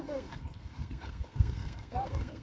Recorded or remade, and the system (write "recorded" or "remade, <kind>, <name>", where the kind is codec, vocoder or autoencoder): remade, codec, SNAC